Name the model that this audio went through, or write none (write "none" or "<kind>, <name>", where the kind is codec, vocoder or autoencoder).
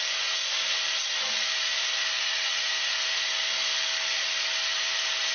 none